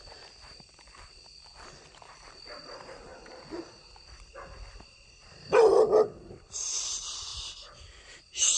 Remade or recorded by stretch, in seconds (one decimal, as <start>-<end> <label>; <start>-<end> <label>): 0.0-3.1 remade; 3.1-6.3 recorded; 6.3-7.3 remade; 7.3-8.6 recorded